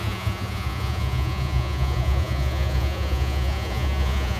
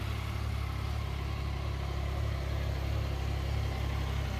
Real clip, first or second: second